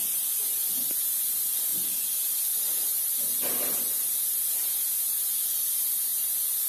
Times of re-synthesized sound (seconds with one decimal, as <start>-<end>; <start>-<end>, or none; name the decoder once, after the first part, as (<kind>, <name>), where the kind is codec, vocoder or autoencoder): none